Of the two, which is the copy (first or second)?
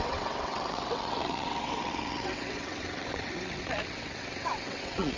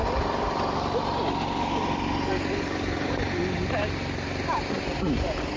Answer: first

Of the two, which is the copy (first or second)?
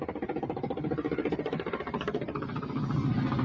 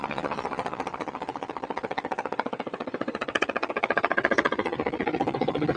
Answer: second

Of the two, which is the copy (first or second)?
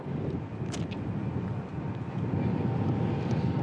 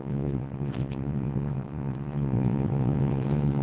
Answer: second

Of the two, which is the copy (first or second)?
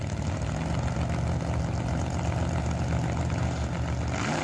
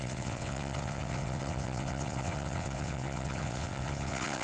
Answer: second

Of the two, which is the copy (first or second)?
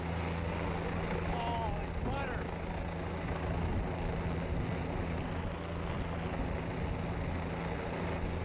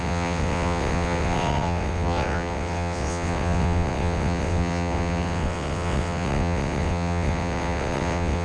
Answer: second